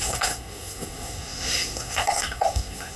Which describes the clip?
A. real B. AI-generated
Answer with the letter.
B